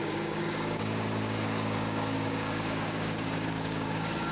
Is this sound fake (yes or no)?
yes